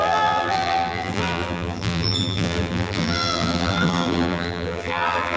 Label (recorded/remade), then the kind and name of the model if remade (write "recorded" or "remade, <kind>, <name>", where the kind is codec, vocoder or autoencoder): remade, vocoder, BigVGAN v2